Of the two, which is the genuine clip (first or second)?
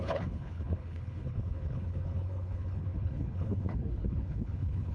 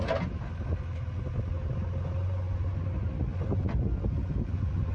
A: second